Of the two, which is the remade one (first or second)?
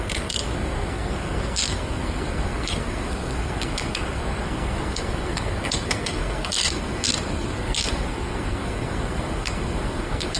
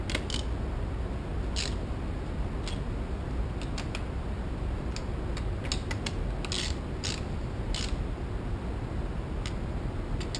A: first